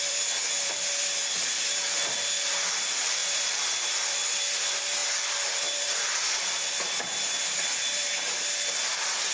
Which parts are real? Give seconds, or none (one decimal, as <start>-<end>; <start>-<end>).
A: 1.2-1.7; 3.2-4.1